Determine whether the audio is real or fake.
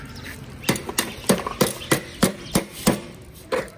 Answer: real